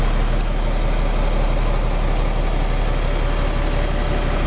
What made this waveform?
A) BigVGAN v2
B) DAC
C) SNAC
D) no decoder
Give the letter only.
D